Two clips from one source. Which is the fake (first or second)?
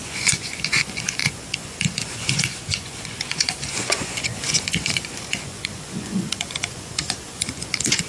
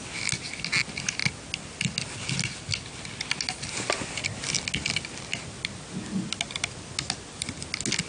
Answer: first